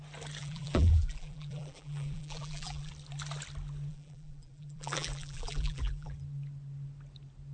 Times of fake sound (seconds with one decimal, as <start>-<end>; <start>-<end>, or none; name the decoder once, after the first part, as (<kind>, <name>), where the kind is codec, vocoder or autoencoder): 0.4-2.9 (vocoder, BigVGAN v2); 3.9-6.2